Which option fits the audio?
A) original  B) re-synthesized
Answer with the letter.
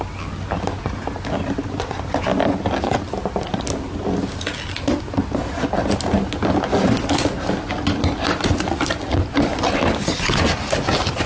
A